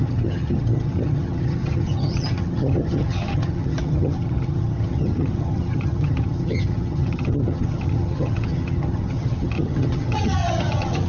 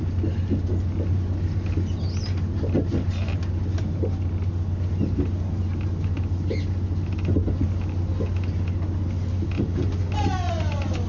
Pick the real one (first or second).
second